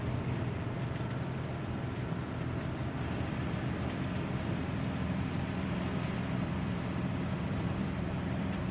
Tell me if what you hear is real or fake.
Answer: fake